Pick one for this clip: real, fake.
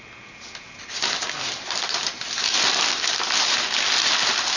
real